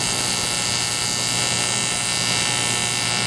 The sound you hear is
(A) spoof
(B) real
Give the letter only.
B